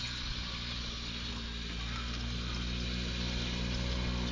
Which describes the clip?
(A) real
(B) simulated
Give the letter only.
A